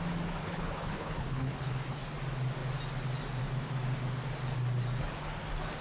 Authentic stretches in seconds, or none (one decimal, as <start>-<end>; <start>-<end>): 0.0-0.4; 2.1-5.8